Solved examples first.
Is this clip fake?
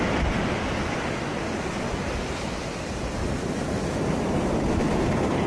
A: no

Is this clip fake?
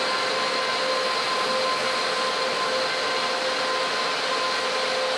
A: no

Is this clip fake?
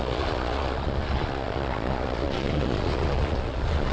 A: yes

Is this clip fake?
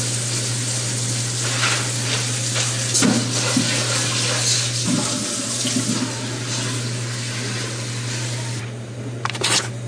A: no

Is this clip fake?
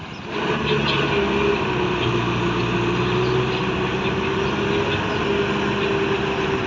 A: no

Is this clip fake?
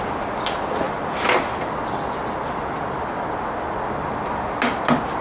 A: no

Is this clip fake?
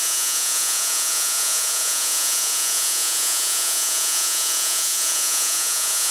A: yes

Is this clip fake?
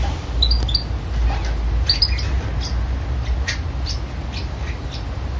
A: no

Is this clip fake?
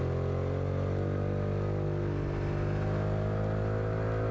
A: no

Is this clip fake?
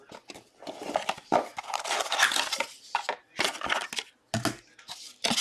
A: no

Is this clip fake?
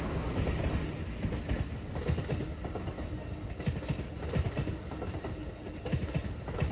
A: no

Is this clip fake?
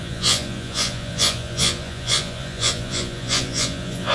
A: yes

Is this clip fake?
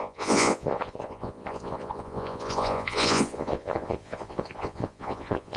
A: yes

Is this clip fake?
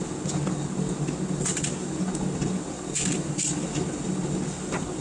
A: no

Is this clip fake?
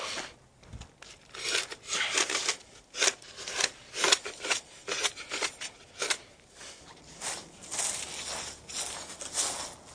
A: no